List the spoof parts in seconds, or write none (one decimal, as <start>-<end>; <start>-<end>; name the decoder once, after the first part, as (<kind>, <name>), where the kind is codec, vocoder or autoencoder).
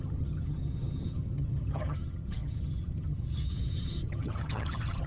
0.0-5.1 (vocoder, HiFi-GAN)